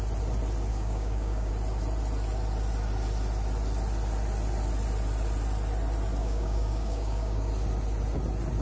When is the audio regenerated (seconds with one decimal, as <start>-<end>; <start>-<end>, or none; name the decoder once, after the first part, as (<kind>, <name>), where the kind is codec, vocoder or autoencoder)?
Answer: 0.7-1.5 (codec, DAC); 6.2-7.5